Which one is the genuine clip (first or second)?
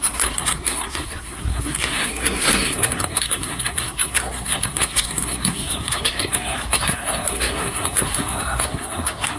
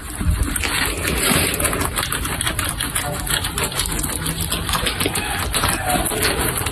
second